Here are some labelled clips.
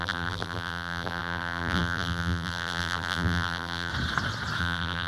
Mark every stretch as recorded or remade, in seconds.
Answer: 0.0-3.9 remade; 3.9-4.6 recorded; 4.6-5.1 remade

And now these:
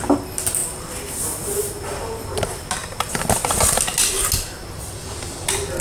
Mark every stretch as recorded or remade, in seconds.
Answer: 0.0-5.8 recorded

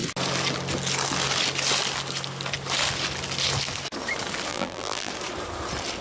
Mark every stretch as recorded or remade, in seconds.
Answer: 0.0-4.5 recorded; 4.5-5.1 remade; 5.1-6.0 recorded

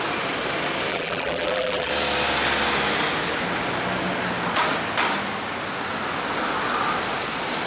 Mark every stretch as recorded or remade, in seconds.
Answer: 0.0-0.9 recorded; 0.9-1.9 remade; 1.9-7.7 recorded

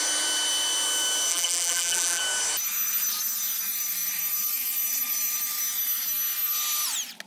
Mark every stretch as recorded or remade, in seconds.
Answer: 0.0-1.3 recorded; 1.3-2.2 remade; 2.2-7.3 recorded

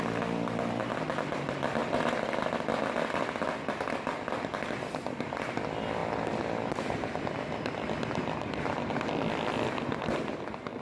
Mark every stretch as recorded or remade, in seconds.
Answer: 0.0-10.8 recorded